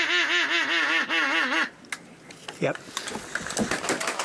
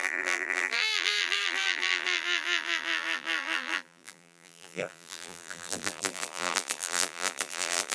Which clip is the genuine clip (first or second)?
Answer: first